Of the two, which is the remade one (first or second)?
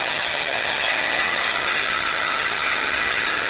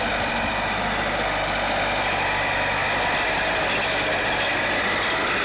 first